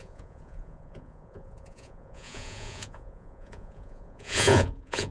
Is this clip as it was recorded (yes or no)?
no